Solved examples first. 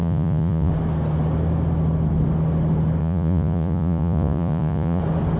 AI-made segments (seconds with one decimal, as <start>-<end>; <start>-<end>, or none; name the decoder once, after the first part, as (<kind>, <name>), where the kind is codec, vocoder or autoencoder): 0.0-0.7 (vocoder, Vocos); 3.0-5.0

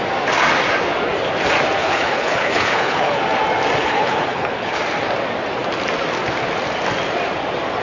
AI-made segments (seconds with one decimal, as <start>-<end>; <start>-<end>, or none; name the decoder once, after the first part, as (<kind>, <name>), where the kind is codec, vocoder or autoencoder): 1.8-3.2 (codec, HILCodec); 3.8-4.8

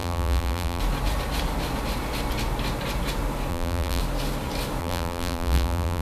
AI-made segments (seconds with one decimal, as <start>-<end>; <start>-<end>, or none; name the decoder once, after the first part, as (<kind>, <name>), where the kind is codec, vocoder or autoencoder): 0.0-0.8 (vocoder, BigVGAN v2); 3.5-4.0; 4.8-6.0

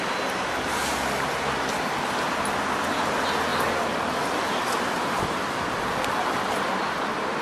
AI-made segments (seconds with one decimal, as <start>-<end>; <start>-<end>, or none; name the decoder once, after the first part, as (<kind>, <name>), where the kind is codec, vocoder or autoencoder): none

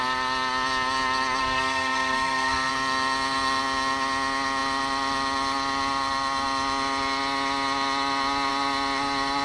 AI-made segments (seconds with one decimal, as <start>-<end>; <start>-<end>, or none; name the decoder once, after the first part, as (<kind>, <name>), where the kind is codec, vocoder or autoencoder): 1.4-2.7 (codec, SNAC)

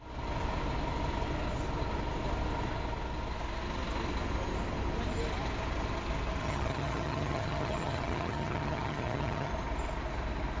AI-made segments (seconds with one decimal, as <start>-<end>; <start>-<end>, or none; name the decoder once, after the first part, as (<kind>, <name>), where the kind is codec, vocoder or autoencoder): 6.4-9.5 (vocoder, HiFi-GAN)

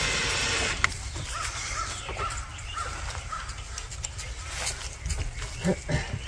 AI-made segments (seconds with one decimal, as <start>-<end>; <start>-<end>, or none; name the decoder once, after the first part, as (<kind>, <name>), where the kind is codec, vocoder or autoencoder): 1.4-2.0 (vocoder, BigVGAN v2)

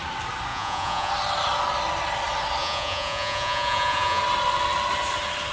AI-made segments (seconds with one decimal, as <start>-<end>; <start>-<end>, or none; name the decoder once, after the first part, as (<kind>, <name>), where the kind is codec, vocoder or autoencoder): 0.5-1.1 (vocoder, Vocos); 2.6-4.2